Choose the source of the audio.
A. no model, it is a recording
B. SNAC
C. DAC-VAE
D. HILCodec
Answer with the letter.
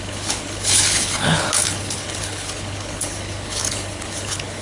D